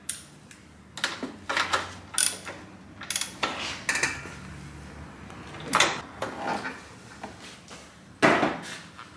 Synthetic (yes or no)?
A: no